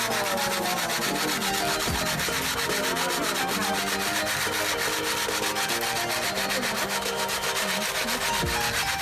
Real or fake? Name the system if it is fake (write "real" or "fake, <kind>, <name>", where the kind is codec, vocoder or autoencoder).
real